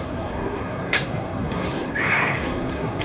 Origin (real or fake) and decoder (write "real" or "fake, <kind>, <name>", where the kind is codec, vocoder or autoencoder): fake, codec, SNAC